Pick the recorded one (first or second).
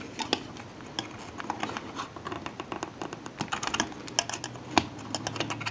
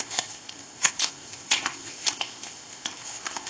first